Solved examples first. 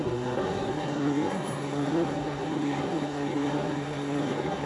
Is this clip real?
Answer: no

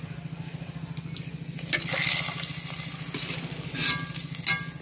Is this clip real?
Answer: yes